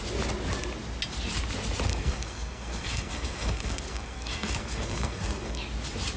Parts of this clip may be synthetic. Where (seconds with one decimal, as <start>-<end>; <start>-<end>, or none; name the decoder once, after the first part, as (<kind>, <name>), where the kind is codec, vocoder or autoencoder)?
1.9-5.6 (codec, SNAC)